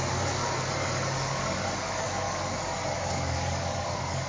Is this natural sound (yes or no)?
no